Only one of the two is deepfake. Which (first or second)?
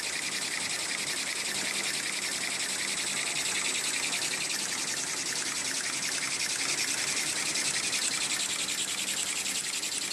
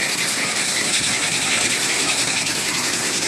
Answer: second